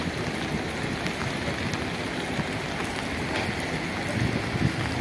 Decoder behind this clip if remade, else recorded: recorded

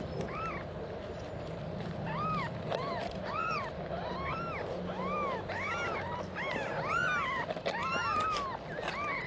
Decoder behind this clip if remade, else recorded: recorded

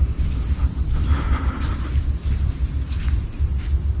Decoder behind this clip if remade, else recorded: recorded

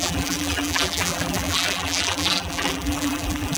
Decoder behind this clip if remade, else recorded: remade, vocoder, BigVGAN v2